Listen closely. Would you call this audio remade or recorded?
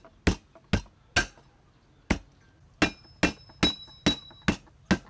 recorded